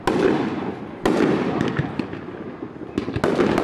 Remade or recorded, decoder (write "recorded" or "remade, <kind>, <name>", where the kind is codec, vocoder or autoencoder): recorded